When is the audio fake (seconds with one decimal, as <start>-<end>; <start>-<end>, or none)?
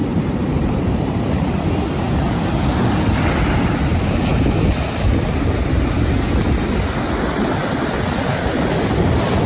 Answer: 0.0-1.7